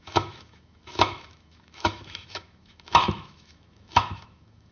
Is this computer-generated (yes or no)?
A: yes